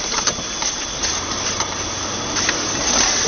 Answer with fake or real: fake